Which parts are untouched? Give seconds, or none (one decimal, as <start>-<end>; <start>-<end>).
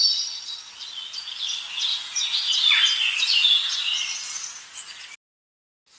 0.0-6.0